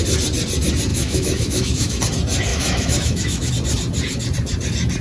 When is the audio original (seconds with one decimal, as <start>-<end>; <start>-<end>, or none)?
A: 0.0-0.9; 2.0-2.5; 3.5-5.0

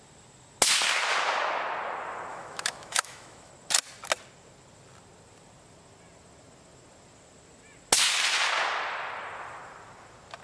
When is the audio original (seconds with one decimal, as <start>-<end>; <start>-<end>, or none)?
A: 0.0-2.3; 3.5-10.4

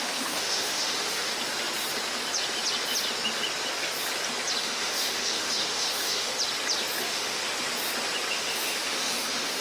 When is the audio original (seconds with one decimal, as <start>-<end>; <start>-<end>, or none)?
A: 1.3-4.6; 6.3-7.0; 7.4-8.3